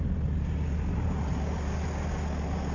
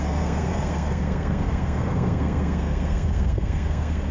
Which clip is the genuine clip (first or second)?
first